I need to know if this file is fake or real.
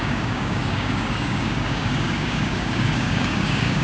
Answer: fake